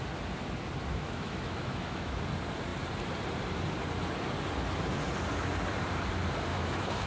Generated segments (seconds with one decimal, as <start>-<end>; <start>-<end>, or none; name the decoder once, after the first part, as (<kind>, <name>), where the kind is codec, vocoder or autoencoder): 0.9-2.2 (autoencoder, DAC-VAE); 6.5-7.1